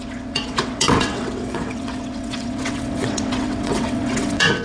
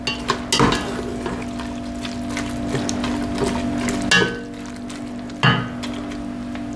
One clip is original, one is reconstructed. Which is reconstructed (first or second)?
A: first